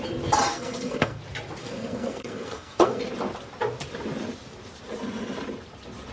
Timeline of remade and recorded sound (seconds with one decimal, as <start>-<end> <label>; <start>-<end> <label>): 0.0-0.5 recorded; 0.5-1.2 remade; 1.2-1.6 recorded; 1.6-3.0 remade; 3.0-6.1 recorded